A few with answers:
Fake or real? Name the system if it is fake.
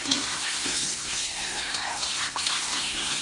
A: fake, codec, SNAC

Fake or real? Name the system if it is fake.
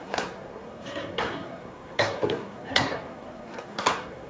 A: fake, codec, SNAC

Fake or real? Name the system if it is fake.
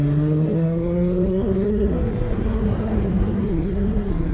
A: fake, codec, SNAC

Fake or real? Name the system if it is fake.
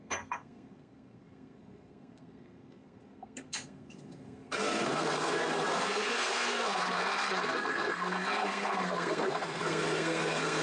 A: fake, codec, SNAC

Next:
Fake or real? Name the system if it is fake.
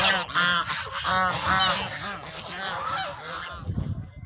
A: real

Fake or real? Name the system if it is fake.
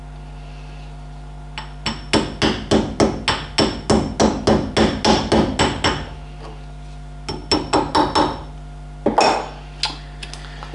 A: real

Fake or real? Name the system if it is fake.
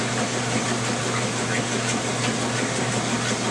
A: real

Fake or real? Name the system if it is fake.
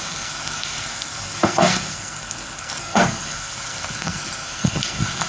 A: fake, codec, SNAC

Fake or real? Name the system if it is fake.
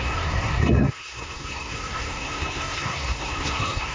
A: fake, codec, SNAC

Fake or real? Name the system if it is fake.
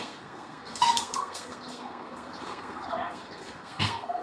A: fake, codec, SNAC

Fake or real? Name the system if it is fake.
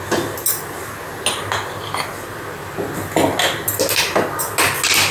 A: real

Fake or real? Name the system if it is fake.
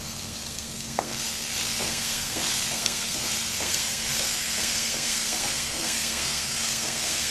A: fake, codec, SNAC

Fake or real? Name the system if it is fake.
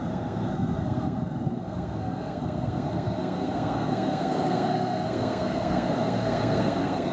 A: fake, codec, SNAC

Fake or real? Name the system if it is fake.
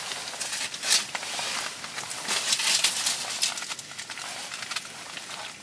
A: real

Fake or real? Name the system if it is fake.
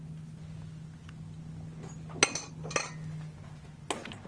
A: real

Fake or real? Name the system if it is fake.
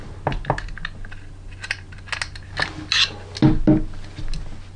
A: real